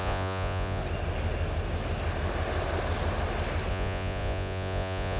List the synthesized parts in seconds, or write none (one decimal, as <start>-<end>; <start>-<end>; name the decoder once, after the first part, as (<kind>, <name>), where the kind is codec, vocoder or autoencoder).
0.0-0.8 (vocoder, Vocos); 3.7-5.2